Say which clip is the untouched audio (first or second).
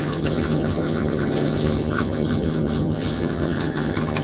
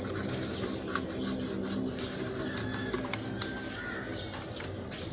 second